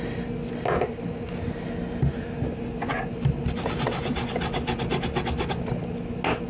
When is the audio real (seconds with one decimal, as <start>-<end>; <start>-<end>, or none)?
0.0-3.1; 4.1-6.5